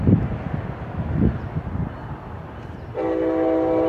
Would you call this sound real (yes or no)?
yes